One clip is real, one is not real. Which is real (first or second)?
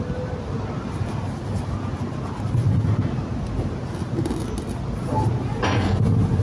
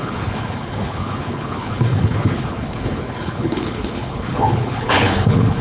first